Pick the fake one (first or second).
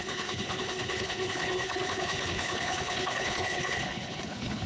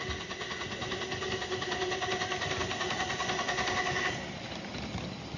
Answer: first